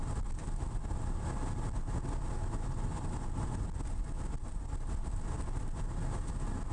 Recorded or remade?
recorded